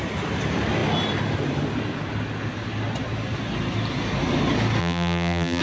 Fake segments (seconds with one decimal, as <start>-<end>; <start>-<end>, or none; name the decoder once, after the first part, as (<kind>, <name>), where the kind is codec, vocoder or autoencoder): 4.8-5.6 (vocoder, BigVGAN v2)